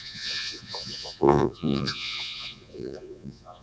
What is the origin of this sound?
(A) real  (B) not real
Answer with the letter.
B